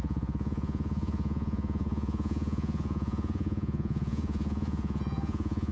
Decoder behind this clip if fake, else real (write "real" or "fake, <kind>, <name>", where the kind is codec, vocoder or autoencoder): fake, vocoder, Vocos